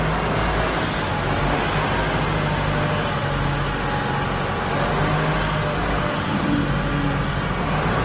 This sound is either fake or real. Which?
real